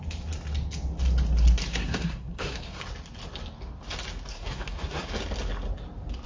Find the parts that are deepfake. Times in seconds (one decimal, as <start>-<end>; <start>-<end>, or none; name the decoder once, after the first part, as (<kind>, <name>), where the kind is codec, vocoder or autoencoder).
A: 1.7-2.8 (codec, SNAC); 4.3-5.1